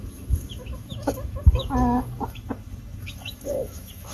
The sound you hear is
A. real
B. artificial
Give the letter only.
B